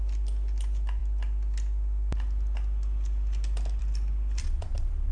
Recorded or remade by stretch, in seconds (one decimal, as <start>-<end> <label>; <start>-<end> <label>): 0.0-4.4 recorded; 4.4-5.1 remade

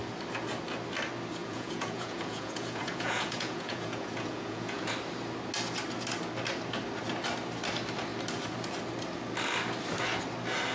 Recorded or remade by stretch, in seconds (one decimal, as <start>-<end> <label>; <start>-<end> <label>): 0.0-1.4 recorded; 1.4-4.9 remade; 4.9-10.7 recorded

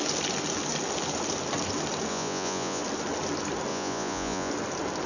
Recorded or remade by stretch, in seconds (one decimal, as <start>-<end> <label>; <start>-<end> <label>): 0.0-2.1 recorded; 2.1-2.8 remade; 2.8-3.7 recorded; 3.7-4.5 remade; 4.5-5.1 recorded

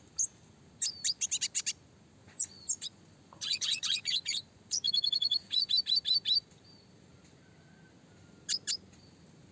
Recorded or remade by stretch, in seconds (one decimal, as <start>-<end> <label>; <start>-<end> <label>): 0.0-2.2 recorded; 2.2-5.7 remade; 5.7-9.5 recorded

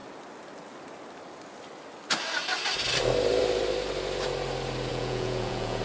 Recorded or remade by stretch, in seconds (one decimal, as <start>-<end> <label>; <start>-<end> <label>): 0.0-4.9 recorded; 4.9-5.8 remade